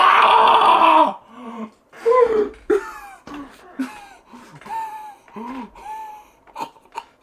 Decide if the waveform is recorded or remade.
remade